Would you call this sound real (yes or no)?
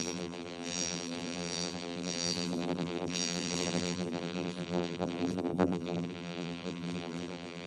no